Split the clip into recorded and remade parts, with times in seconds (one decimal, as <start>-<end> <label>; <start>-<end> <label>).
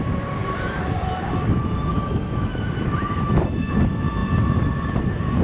0.0-2.5 recorded; 2.5-3.3 remade; 3.3-5.4 recorded